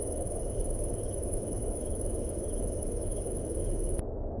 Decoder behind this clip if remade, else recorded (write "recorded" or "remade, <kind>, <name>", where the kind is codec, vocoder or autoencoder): remade, autoencoder, DAC-VAE